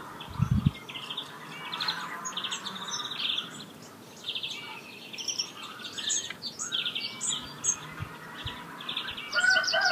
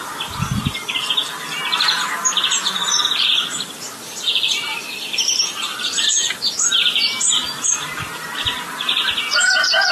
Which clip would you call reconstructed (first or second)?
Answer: second